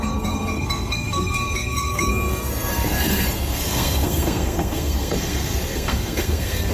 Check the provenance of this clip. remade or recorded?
remade